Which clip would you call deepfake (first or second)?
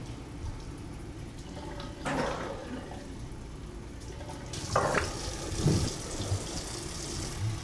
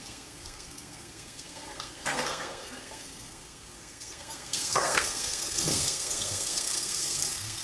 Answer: second